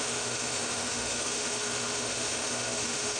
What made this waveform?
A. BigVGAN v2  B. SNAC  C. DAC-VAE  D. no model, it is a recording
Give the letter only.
C